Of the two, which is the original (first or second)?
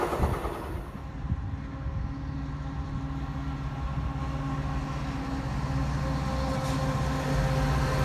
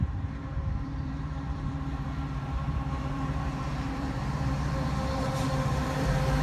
first